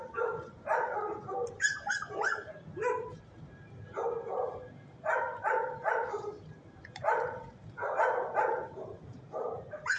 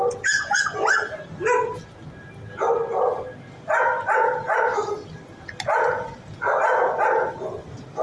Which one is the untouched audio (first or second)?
second